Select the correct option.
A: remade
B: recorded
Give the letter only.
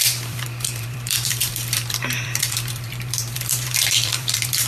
A